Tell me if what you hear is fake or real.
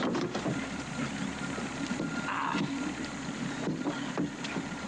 real